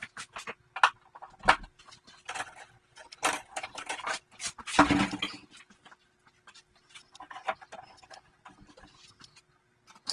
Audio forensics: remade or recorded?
recorded